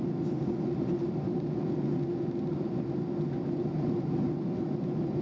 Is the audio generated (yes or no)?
no